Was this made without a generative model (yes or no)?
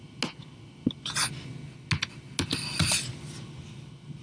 yes